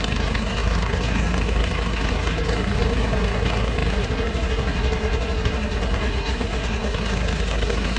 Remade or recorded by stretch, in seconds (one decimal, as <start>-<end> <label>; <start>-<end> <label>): 0.0-8.0 remade